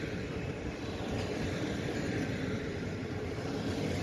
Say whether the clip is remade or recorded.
recorded